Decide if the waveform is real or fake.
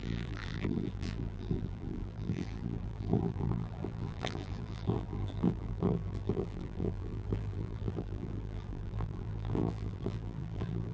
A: fake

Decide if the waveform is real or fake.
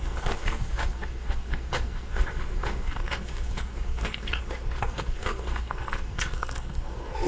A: fake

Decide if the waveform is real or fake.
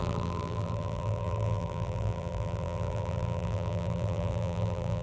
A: fake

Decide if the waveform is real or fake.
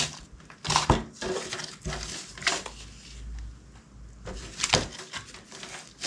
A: real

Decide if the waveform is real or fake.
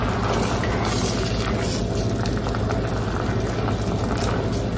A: real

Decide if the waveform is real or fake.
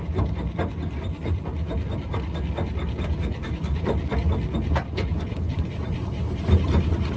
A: real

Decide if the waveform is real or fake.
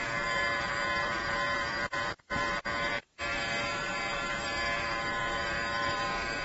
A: fake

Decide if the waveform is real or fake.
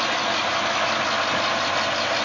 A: real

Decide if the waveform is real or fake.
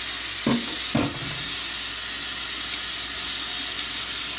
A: real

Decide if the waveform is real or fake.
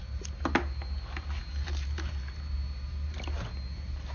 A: real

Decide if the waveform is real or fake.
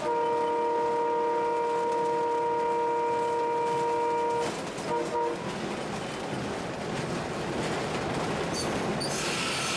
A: real